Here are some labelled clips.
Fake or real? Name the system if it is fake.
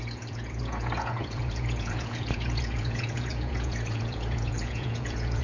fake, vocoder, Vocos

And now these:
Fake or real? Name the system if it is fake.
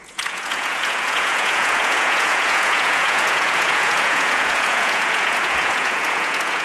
fake, vocoder, Vocos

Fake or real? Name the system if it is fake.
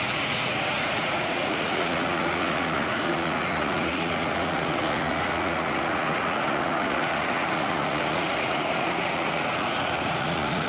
fake, vocoder, Vocos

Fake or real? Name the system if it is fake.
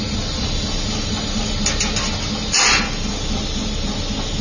real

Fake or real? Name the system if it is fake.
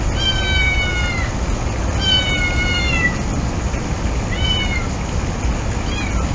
real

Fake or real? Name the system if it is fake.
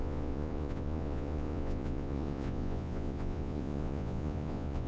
fake, vocoder, Vocos